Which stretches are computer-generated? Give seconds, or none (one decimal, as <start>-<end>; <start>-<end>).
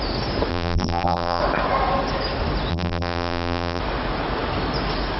0.5-1.4; 2.7-3.8